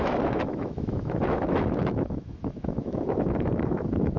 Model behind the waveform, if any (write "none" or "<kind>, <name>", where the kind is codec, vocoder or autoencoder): autoencoder, DAC-VAE